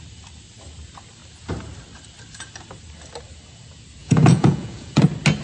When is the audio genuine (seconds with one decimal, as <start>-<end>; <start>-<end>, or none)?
0.0-4.0; 5.0-5.4